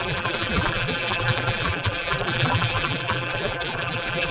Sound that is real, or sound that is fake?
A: fake